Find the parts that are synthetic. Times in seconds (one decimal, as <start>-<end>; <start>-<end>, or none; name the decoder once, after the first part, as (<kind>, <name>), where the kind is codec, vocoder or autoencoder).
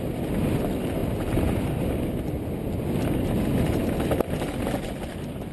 none